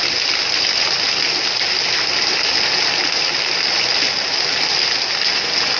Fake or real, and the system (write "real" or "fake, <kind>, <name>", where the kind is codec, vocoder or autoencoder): real